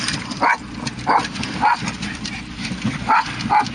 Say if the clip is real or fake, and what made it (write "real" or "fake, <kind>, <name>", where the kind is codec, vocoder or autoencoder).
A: fake, vocoder, BigVGAN v2